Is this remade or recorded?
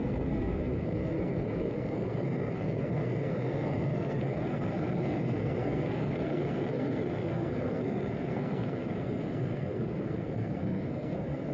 remade